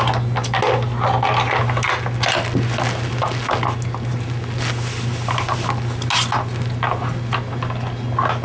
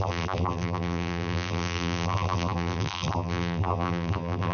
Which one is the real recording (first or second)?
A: first